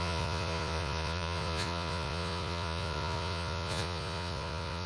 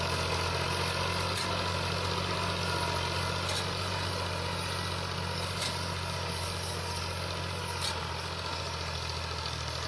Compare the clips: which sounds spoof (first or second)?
first